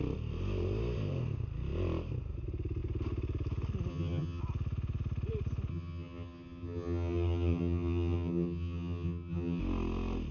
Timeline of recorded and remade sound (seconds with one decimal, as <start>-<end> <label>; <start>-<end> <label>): 0.0-3.9 recorded; 3.9-4.4 remade; 4.4-5.7 recorded; 5.7-9.6 remade; 9.6-10.3 recorded